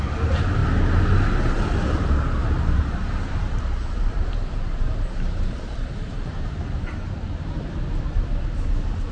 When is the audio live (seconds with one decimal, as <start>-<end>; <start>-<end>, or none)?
0.0-2.4; 7.7-9.1